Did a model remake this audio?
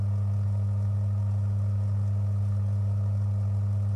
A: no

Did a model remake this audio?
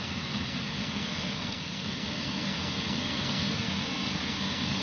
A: yes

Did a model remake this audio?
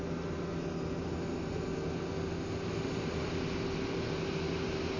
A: no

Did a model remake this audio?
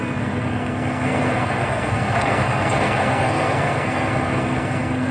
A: yes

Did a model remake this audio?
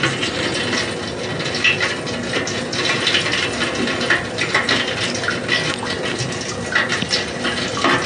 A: no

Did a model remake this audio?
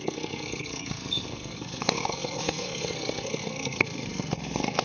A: yes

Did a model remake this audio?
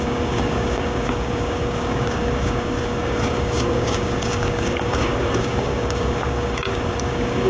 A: yes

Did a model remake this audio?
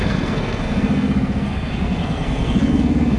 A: yes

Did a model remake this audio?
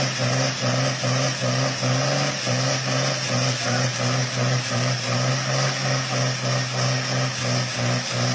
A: no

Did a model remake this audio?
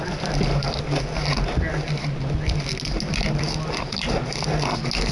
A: no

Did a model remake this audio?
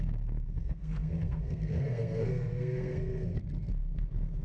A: yes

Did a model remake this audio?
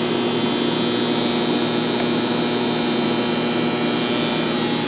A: no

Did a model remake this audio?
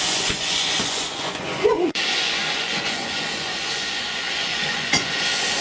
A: yes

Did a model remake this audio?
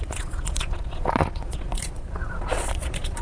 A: yes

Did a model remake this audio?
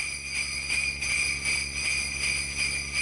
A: no